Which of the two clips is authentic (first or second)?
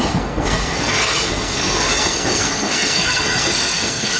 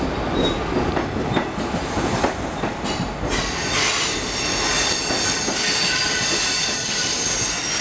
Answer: second